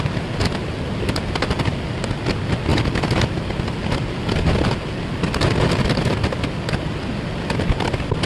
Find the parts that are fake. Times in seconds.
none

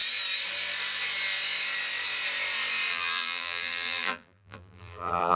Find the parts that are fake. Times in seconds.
2.9-5.4 (vocoder, BigVGAN v2)

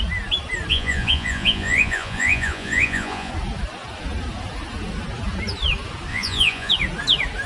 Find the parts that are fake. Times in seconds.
0.7-3.3 (vocoder, Vocos); 6.1-6.7

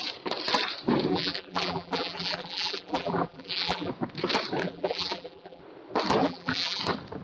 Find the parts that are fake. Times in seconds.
1.1-3.9 (vocoder, BigVGAN v2); 4.6-5.6; 6.2-6.8

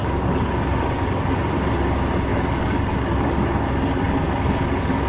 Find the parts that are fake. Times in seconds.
0.0-1.4 (codec, DAC); 2.3-5.1